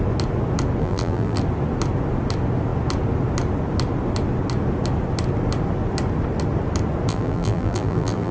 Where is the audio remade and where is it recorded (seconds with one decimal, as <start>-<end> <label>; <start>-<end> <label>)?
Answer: 0.0-0.8 recorded; 0.8-1.4 remade; 1.4-7.1 recorded; 7.1-8.3 remade